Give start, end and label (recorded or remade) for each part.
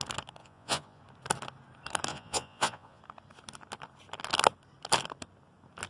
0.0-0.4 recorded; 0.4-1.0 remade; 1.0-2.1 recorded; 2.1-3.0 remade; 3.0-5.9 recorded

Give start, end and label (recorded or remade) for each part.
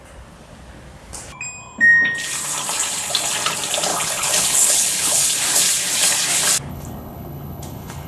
0.0-3.9 recorded; 3.9-5.4 remade; 5.4-6.7 recorded; 6.7-8.1 remade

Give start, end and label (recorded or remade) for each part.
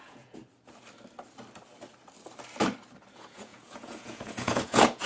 0.0-0.4 remade; 0.4-3.1 recorded; 3.1-5.1 remade